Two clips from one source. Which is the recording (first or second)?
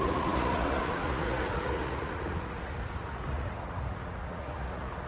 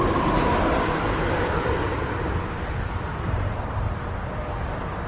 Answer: second